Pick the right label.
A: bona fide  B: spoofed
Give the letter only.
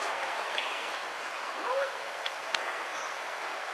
B